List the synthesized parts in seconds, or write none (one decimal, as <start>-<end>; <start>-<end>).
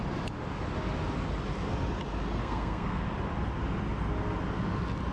2.4-3.0